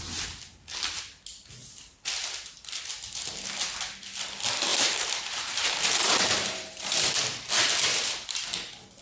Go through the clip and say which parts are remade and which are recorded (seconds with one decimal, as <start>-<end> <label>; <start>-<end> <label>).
0.0-4.7 recorded; 4.7-7.1 remade; 7.1-9.0 recorded